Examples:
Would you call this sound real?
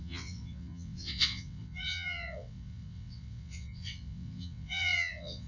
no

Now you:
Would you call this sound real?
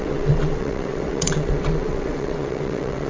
no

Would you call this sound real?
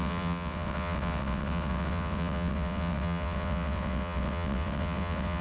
no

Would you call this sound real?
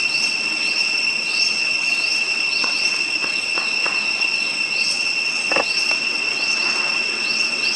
no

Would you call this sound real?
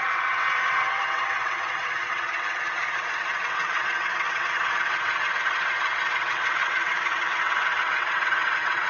no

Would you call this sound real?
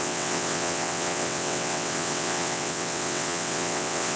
no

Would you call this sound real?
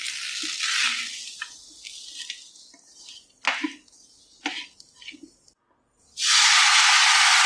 yes